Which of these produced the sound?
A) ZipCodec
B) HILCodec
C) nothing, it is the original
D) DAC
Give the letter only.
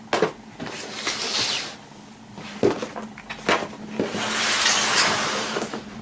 C